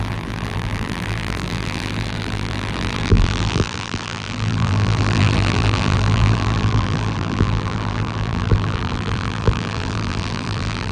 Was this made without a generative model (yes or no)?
no